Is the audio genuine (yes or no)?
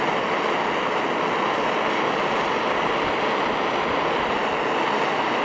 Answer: yes